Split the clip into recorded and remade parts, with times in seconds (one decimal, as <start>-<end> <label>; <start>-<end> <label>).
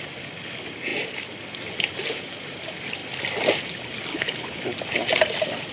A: 0.0-4.1 recorded; 4.1-4.6 remade; 4.6-5.7 recorded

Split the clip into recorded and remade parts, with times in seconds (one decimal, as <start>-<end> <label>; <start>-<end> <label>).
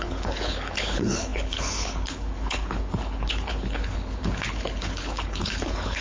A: 0.0-6.0 remade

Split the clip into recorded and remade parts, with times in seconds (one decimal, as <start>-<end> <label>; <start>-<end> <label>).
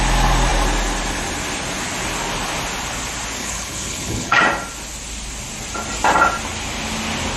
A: 0.0-3.4 recorded; 3.4-4.4 remade; 4.4-7.4 recorded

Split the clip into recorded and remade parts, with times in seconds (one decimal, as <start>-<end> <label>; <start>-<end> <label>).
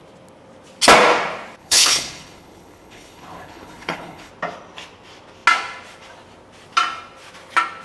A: 0.0-1.6 recorded; 1.6-4.3 remade; 4.3-7.8 recorded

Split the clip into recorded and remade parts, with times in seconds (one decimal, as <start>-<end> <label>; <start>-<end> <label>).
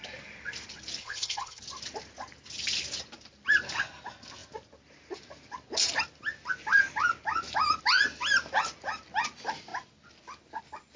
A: 0.0-1.0 recorded; 1.0-1.6 remade; 1.6-11.0 recorded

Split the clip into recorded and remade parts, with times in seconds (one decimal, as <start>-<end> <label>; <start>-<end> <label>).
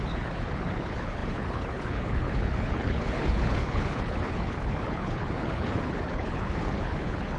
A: 0.0-7.4 remade